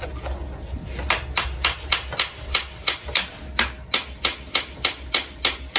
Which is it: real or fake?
real